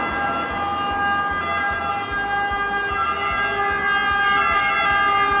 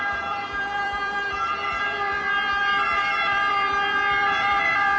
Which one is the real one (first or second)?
first